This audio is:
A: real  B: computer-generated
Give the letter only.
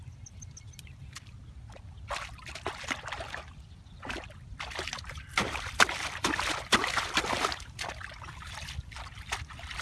A